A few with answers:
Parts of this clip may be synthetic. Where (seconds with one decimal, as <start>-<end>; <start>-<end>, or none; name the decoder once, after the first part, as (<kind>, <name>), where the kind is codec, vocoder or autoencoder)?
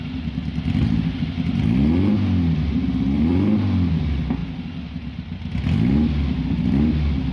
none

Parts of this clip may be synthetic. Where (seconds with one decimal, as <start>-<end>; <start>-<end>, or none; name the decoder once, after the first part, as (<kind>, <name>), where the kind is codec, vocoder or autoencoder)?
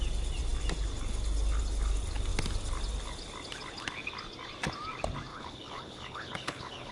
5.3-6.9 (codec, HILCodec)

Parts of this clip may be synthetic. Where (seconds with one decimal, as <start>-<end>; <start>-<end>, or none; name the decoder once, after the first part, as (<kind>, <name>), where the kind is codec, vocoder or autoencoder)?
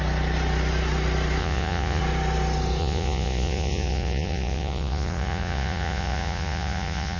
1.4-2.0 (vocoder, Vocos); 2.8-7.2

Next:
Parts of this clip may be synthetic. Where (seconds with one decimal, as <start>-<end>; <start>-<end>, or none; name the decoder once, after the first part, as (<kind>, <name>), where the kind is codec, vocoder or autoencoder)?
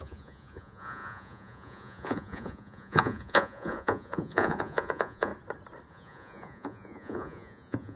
0.0-5.3 (vocoder, Vocos); 5.9-8.0